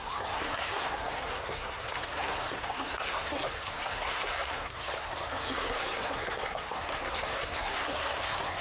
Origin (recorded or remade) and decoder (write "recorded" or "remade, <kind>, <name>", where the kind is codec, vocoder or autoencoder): remade, codec, SNAC